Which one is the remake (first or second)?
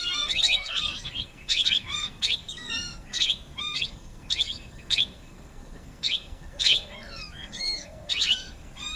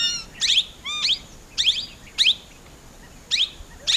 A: first